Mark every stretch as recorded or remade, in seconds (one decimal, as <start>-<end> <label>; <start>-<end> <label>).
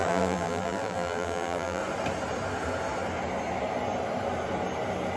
0.0-1.8 remade; 1.8-5.2 recorded